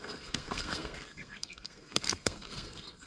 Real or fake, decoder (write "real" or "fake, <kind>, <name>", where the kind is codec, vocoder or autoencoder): fake, codec, SNAC